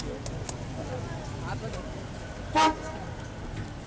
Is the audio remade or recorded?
recorded